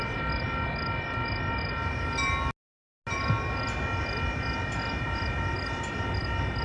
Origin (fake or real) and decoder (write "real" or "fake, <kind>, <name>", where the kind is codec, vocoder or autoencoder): real